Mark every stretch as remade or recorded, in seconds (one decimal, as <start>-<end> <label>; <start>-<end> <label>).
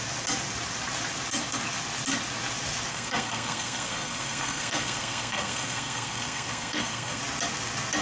0.0-2.9 recorded; 2.9-7.2 remade; 7.2-8.0 recorded